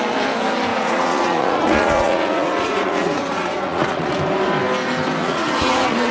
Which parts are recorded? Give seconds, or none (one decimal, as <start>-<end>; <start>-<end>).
0.0-0.7; 4.1-5.2